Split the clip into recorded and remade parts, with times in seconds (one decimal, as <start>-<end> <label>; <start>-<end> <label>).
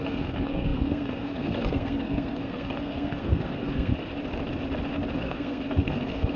0.0-3.9 remade; 3.9-5.2 recorded; 5.2-6.4 remade